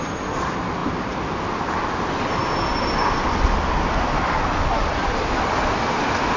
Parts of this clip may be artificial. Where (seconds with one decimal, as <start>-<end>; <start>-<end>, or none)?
none